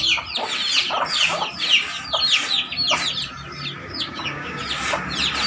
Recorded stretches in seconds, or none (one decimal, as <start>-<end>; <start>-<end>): 0.0-3.8; 4.6-5.5